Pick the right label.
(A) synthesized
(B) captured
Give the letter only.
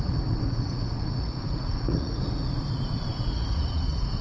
A